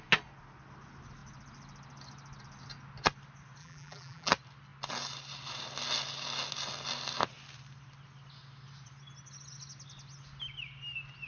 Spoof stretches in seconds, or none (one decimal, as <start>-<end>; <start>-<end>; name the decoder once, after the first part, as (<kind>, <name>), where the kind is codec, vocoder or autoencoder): 3.6-4.3 (vocoder, BigVGAN v2)

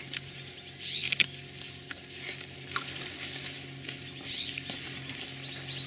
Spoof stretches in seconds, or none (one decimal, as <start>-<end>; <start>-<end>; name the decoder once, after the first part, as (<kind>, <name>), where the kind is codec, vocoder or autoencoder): none

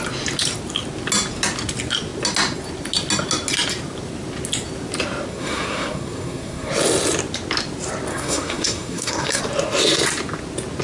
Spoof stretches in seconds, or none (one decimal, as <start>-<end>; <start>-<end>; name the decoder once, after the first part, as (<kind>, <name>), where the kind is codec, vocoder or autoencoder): 5.3-6.7 (codec, SNAC); 8.1-9.4

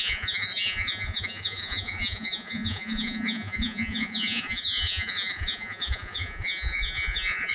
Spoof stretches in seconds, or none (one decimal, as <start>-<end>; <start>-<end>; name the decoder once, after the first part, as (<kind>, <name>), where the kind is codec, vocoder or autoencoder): 0.0-7.5 (vocoder, Vocos)

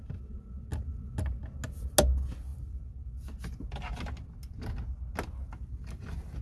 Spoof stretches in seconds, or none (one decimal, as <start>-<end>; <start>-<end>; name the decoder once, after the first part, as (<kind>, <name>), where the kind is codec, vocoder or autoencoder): none

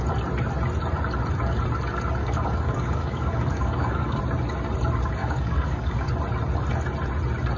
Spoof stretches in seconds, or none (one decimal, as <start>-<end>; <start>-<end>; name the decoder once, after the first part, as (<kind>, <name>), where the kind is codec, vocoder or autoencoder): 2.2-4.2 (codec, DAC); 5.2-6.1

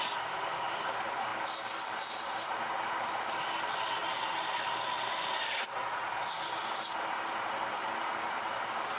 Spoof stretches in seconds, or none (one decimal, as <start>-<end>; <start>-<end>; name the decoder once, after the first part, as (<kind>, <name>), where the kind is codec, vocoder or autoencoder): none